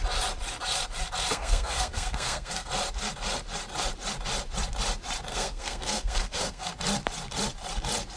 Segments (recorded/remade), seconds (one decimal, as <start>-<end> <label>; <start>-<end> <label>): 0.0-1.3 recorded; 1.3-2.7 remade; 2.7-5.3 recorded; 5.3-6.7 remade; 6.7-8.2 recorded